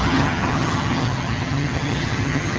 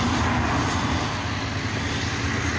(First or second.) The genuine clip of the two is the second